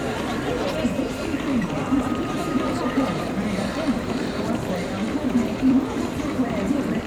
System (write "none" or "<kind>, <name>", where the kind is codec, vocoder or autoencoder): vocoder, BigVGAN v2